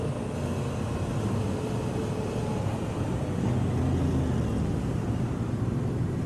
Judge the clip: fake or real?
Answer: real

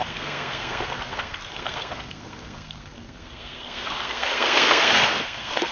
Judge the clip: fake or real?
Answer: fake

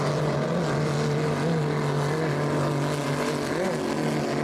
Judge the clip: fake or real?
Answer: real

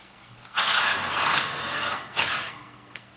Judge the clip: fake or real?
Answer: fake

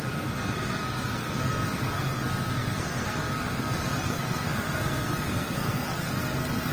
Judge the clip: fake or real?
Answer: fake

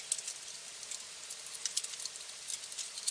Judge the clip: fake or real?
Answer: real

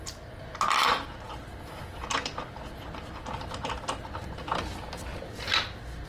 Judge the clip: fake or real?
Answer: real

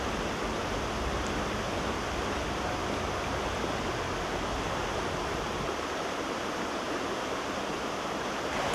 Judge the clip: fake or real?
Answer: real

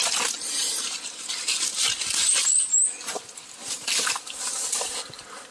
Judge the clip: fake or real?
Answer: real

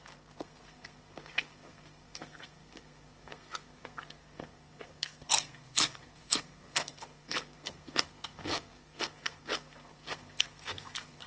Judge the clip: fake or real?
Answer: fake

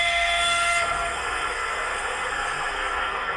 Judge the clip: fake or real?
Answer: fake